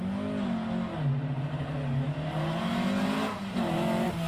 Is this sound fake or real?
real